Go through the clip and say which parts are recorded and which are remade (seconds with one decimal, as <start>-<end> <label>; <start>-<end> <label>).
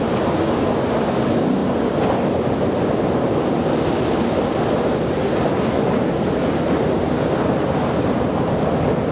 0.0-9.1 recorded